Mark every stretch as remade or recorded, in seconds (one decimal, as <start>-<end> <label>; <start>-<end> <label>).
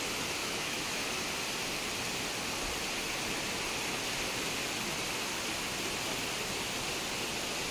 0.0-0.4 recorded; 0.4-1.0 remade; 1.0-7.7 recorded